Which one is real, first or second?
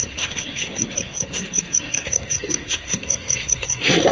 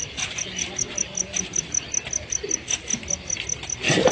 second